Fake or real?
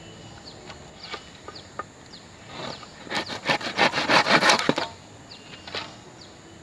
real